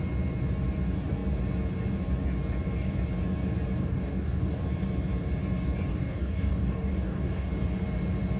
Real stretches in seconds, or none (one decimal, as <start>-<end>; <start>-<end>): 0.0-3.8; 4.6-5.9; 7.5-8.4